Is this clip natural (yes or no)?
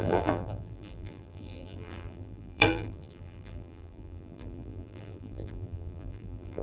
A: no